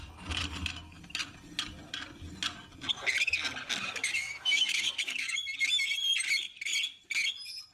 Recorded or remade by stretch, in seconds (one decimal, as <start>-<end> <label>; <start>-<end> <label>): 0.0-3.8 recorded; 3.8-5.4 remade; 5.4-7.7 recorded